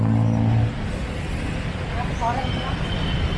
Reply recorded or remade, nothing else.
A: recorded